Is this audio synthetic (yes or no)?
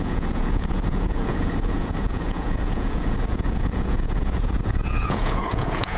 yes